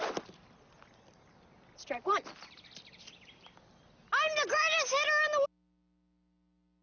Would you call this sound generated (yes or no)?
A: no